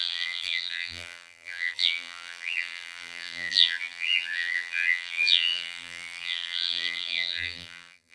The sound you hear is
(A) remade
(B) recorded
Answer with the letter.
A